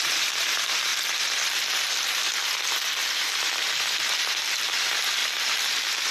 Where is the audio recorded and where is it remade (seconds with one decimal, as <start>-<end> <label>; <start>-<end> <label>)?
0.0-0.9 remade; 0.9-3.1 recorded; 3.1-6.1 remade